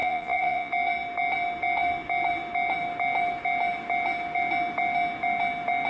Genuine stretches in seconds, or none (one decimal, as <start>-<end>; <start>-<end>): 0.7-5.9